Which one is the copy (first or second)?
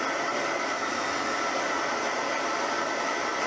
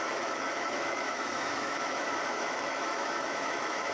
second